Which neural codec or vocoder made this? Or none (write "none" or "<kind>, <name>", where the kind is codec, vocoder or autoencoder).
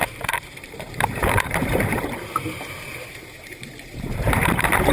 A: vocoder, BigVGAN v2